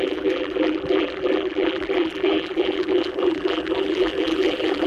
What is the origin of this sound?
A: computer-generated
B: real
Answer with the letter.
A